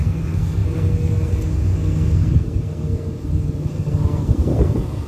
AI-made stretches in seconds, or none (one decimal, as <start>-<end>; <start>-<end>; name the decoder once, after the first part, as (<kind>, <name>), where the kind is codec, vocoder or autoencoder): 0.0-5.1 (codec, SNAC)